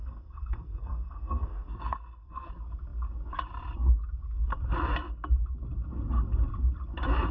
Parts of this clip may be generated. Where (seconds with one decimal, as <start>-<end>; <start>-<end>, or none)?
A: 0.0-2.5